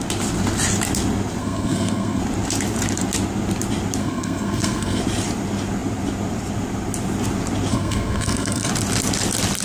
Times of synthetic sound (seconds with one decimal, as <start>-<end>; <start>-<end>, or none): 1.4-2.2; 4.0-5.0; 7.7-8.7